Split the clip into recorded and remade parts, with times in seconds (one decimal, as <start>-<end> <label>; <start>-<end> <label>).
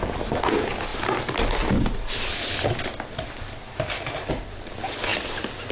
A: 0.0-5.7 recorded